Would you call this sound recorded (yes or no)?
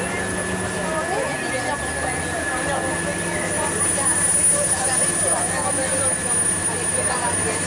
yes